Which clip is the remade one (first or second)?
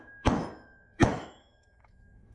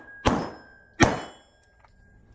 first